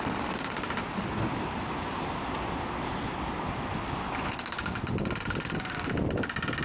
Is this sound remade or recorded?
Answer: recorded